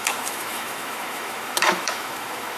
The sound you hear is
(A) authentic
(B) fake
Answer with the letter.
B